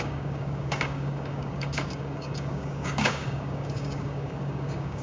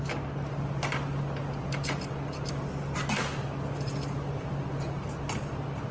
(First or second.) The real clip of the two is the second